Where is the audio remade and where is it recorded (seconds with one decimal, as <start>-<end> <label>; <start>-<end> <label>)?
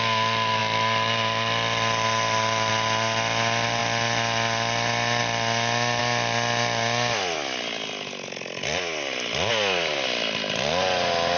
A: 0.0-11.4 recorded